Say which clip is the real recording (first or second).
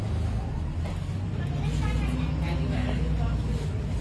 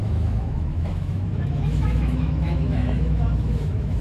first